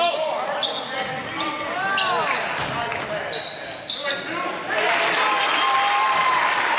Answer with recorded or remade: recorded